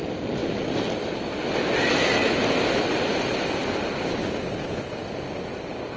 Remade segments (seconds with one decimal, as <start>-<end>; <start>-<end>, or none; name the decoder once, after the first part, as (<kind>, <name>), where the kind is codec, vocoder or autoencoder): 0.4-1.1 (vocoder, BigVGAN v2); 4.2-4.7